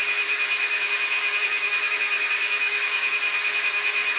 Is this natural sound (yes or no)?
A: no